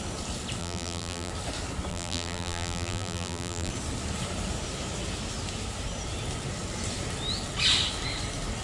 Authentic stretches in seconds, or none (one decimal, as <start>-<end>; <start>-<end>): 0.0-0.6; 1.3-1.9; 3.7-8.6